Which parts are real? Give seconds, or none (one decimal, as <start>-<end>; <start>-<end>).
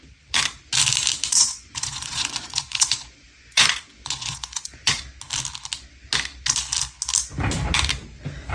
0.0-1.4; 5.0-8.5